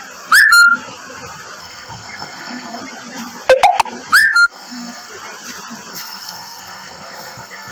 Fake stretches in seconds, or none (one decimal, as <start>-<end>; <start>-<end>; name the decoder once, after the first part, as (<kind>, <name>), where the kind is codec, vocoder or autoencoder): 1.6-2.8 (codec, SNAC); 4.2-5.1; 5.9-7.7